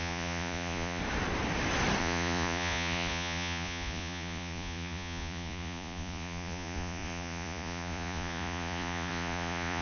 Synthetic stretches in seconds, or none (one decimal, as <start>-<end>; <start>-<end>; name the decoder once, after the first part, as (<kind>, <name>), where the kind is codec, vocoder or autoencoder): 0.0-1.0 (vocoder, Vocos); 2.0-9.8